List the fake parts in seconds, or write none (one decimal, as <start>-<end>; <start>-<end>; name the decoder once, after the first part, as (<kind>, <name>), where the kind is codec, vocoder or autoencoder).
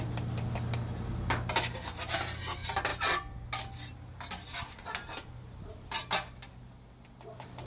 none